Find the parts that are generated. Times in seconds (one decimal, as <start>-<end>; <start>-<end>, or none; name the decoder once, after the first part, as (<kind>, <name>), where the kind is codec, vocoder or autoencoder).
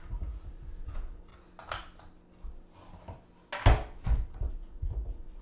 0.0-1.3 (vocoder, Vocos); 4.5-5.4